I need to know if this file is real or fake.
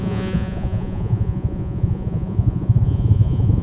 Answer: fake